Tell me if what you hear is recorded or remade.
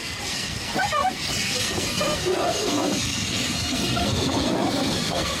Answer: remade